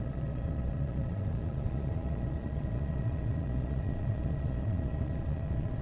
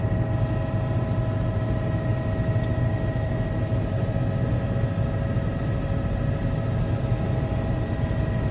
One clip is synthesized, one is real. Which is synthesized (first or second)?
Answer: first